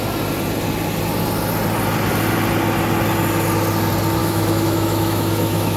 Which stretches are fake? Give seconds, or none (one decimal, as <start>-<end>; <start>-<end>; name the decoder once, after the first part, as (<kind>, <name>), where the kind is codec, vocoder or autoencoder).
4.2-5.8 (autoencoder, DAC-VAE)